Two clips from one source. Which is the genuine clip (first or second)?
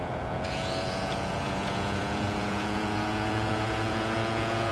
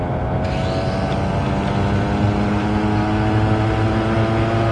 second